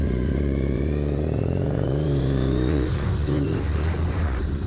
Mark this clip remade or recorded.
remade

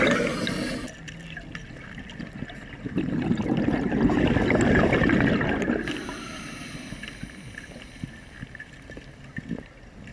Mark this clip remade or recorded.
recorded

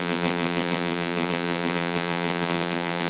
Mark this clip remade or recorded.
remade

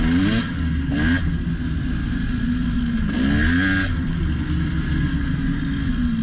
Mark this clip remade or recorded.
recorded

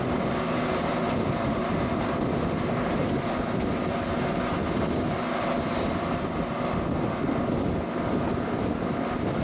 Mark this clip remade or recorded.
recorded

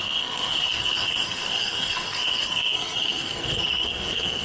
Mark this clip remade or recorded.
remade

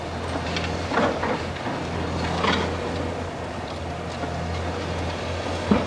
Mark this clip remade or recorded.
recorded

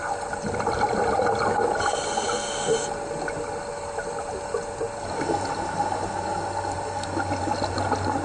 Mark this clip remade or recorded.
recorded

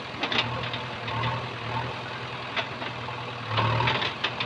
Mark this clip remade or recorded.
recorded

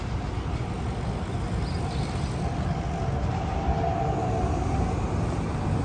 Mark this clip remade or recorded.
recorded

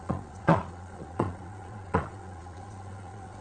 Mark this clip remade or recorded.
remade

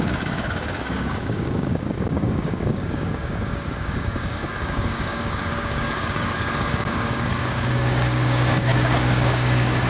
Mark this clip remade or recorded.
remade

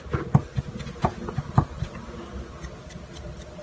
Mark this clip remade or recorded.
recorded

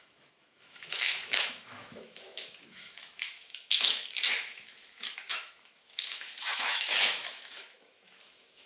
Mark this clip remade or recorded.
remade